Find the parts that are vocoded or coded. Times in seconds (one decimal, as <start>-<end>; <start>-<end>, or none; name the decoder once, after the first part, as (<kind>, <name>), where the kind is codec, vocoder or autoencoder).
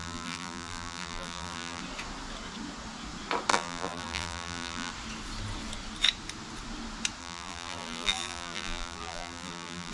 0.0-1.8 (vocoder, BigVGAN v2); 3.5-4.9; 7.2-9.9